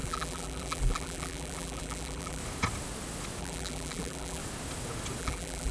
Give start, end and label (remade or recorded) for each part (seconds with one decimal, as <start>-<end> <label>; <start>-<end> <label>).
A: 0.0-2.4 remade; 2.4-3.4 recorded; 3.4-4.4 remade; 4.4-5.2 recorded; 5.2-5.7 remade